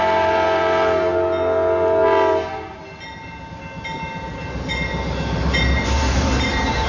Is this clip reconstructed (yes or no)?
no